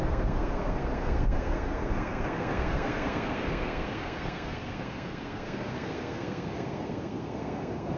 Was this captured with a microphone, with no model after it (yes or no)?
no